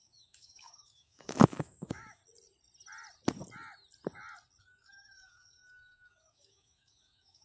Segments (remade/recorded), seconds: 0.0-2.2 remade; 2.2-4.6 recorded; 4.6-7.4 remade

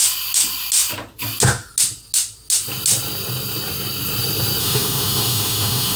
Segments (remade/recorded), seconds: 0.0-4.6 recorded; 4.6-6.0 remade

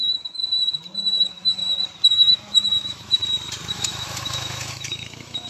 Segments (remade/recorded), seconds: 0.0-0.4 remade; 0.4-1.2 recorded; 1.2-1.6 remade; 1.6-2.1 recorded; 2.1-3.2 remade; 3.2-3.7 recorded; 3.7-5.5 remade